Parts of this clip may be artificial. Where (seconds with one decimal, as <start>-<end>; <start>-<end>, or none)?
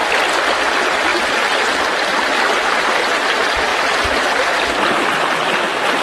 none